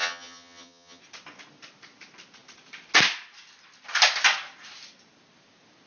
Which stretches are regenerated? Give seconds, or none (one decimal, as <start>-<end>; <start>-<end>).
0.0-1.0